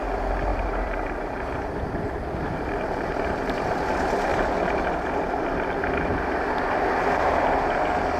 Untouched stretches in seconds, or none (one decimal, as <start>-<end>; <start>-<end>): 0.0-0.5; 3.5-8.2